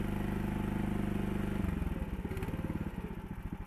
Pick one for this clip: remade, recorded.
recorded